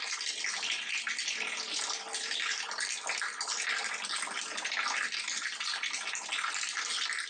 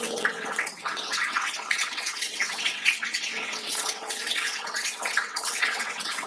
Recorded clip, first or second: first